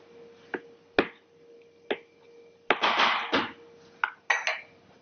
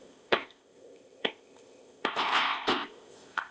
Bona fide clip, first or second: first